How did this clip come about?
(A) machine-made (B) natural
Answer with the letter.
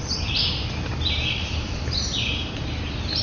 A